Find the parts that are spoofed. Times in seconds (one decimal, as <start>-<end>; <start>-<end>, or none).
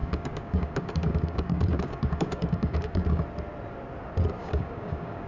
0.0-3.2; 4.4-5.3